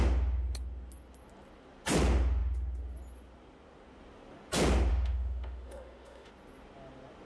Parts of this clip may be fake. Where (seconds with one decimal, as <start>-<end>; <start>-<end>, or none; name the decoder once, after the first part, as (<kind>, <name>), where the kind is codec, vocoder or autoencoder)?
4.9-6.3 (autoencoder, DAC-VAE)